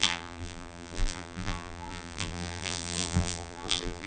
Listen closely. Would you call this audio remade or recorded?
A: remade